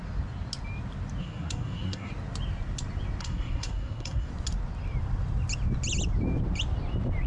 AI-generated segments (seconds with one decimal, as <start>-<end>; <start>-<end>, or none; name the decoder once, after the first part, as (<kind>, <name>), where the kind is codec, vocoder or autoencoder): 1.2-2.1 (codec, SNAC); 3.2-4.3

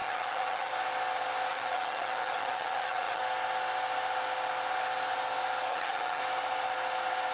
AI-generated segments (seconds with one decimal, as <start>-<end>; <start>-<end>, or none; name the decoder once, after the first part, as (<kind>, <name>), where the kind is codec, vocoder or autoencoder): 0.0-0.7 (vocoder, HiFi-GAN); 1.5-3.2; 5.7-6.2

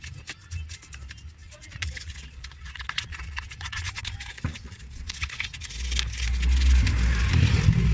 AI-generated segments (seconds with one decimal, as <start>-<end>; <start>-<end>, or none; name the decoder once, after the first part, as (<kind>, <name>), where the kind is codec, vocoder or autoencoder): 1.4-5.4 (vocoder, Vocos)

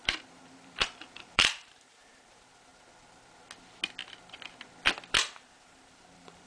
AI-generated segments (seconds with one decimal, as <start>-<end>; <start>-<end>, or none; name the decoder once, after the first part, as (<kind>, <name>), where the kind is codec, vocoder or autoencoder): 0.0-2.7 (vocoder, BigVGAN v2); 5.4-6.5

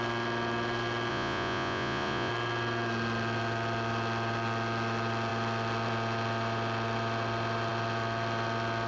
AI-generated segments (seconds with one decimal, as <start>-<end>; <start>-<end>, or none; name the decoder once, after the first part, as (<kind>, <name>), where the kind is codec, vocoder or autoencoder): 1.1-2.3 (vocoder, Vocos)

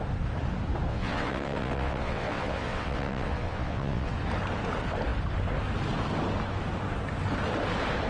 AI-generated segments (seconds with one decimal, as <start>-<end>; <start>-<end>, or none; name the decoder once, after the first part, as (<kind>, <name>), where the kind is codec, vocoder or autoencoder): 0.9-4.1 (vocoder, WaveNeXt)

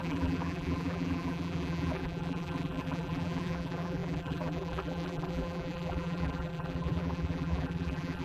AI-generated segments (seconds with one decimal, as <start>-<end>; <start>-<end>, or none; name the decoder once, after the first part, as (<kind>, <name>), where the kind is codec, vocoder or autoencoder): 0.0-8.2 (vocoder, BigVGAN v2)